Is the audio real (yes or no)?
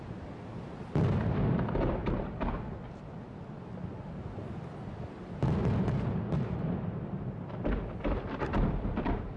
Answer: yes